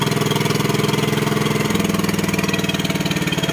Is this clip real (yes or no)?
yes